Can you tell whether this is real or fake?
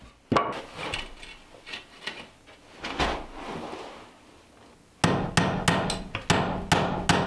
real